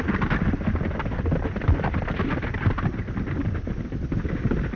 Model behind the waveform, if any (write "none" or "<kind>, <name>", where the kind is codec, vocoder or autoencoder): none